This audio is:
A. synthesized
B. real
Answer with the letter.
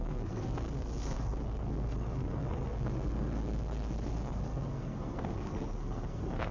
A